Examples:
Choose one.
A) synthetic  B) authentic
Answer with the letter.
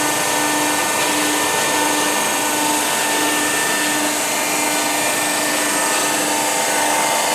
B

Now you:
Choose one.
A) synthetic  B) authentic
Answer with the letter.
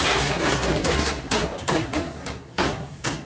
A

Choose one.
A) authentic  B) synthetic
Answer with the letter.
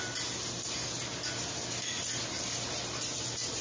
A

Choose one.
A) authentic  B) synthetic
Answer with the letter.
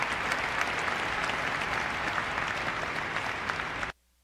A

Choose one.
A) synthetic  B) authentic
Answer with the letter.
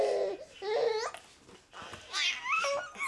B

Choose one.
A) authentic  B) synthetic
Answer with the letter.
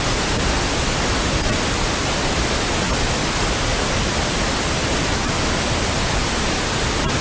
A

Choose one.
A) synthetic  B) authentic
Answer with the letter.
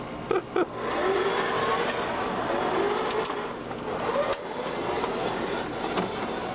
B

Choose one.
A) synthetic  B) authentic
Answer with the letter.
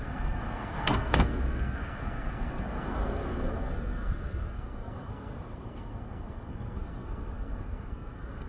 A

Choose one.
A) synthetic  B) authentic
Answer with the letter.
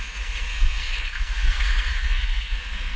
A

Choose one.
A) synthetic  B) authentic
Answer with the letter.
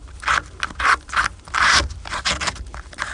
B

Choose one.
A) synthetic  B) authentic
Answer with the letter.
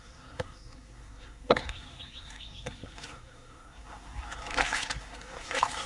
A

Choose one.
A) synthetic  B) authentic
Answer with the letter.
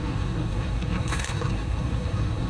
A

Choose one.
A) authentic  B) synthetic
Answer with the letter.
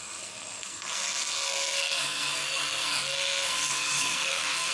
B